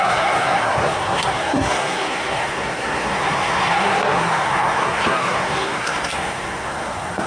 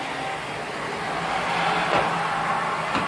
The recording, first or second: second